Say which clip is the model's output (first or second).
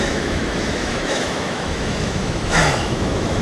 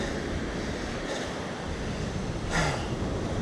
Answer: first